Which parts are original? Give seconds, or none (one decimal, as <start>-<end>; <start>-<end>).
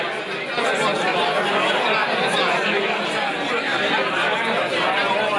0.0-5.4